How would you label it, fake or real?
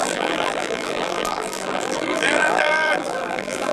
fake